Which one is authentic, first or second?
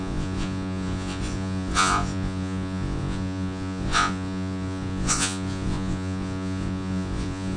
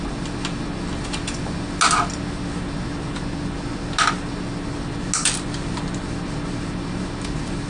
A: second